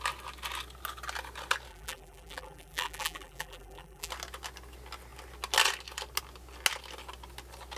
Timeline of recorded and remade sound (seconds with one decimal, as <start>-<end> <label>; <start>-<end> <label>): 0.0-1.7 recorded; 1.7-4.1 remade; 4.1-7.8 recorded